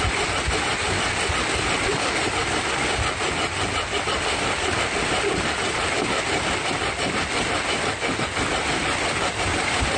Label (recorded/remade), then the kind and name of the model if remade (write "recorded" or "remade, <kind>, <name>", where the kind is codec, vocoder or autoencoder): recorded